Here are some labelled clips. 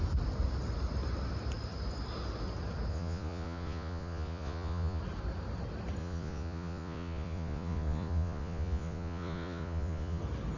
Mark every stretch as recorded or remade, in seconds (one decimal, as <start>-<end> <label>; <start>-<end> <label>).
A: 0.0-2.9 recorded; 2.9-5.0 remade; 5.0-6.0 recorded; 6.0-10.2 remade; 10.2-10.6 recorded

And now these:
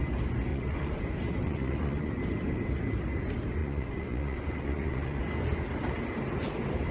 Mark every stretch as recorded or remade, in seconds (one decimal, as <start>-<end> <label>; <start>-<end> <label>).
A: 0.0-0.5 recorded; 0.5-1.0 remade; 1.0-1.4 recorded; 1.4-2.1 remade; 2.1-3.6 recorded; 3.6-5.2 remade; 5.2-6.9 recorded

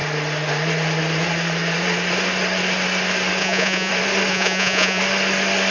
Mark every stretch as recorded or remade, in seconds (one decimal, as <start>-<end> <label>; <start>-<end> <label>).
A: 0.0-3.4 recorded; 3.4-3.9 remade; 3.9-4.3 recorded; 4.3-5.0 remade; 5.0-5.7 recorded

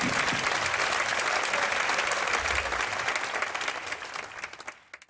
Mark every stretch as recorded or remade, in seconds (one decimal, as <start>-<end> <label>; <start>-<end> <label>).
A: 0.0-5.1 recorded